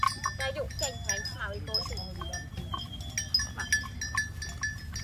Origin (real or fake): real